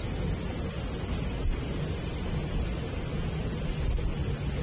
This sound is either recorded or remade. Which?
recorded